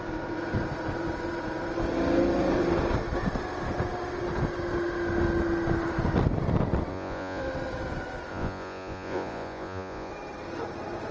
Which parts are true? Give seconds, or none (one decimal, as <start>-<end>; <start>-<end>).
0.0-6.9; 7.4-8.3; 10.1-11.1